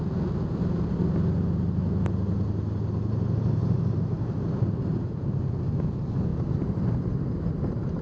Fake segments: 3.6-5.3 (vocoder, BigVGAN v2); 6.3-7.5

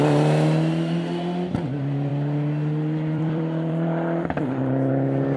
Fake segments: 2.1-5.4 (vocoder, BigVGAN v2)

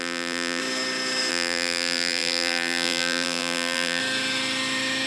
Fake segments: 0.0-0.6 (vocoder, BigVGAN v2); 1.3-4.0